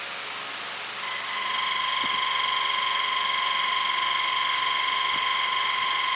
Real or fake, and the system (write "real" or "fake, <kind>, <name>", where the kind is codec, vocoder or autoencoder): real